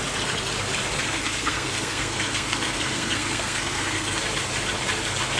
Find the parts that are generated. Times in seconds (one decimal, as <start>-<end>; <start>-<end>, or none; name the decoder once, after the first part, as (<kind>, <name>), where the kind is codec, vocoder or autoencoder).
1.0-4.2 (codec, SNAC)